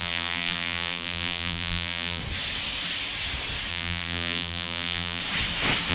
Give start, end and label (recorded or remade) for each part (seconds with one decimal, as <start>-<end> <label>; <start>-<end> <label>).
0.0-2.2 remade; 2.2-3.7 recorded; 3.7-5.2 remade; 5.2-5.9 recorded

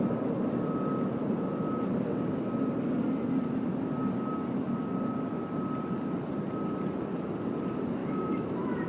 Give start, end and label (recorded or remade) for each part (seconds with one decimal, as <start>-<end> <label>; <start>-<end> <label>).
0.0-8.0 recorded; 8.0-8.9 remade

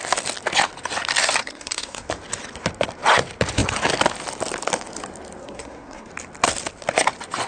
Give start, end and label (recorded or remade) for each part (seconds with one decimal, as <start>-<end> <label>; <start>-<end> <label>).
0.0-1.4 recorded; 1.4-2.1 remade; 2.1-5.4 recorded; 5.4-6.1 remade; 6.1-7.5 recorded

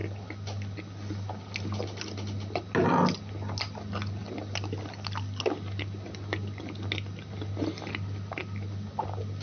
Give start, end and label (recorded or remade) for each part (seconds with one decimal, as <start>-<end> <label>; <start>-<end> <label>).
0.0-9.4 recorded

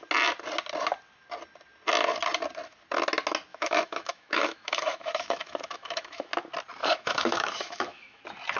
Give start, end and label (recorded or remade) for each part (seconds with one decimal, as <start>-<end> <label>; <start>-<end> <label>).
0.0-3.5 recorded; 3.5-6.3 remade; 6.3-6.8 recorded; 6.8-8.2 remade; 8.2-8.6 recorded

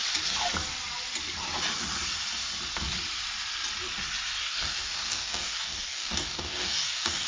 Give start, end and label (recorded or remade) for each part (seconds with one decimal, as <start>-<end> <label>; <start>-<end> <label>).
0.0-4.4 recorded; 4.4-7.3 remade

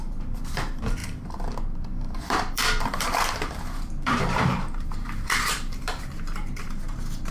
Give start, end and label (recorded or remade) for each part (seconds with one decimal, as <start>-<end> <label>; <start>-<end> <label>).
0.0-7.3 remade

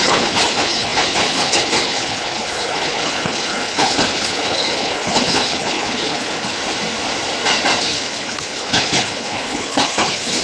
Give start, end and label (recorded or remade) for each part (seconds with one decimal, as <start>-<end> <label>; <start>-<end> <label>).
0.0-6.6 remade; 6.6-7.8 recorded; 7.8-10.4 remade